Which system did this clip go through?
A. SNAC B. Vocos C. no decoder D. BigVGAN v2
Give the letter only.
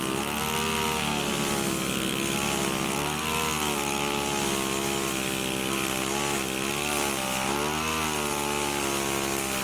C